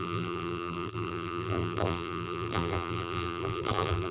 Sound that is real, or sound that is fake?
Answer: fake